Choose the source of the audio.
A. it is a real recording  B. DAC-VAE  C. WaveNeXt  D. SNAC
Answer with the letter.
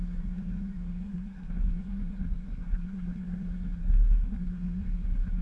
D